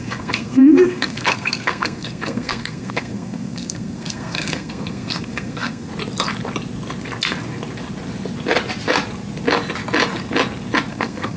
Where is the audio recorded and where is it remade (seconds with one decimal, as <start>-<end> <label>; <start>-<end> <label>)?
0.0-5.9 remade; 5.9-10.9 recorded; 10.9-11.4 remade